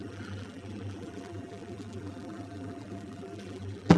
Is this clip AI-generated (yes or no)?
yes